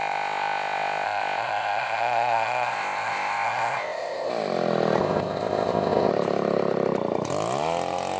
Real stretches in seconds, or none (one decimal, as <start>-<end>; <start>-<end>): 4.3-5.0; 6.1-8.2